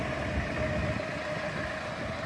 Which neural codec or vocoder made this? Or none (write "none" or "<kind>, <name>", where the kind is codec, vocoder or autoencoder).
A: none